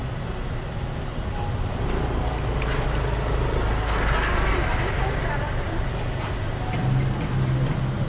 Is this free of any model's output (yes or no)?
yes